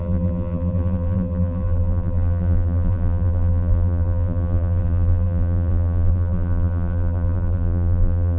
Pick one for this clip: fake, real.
fake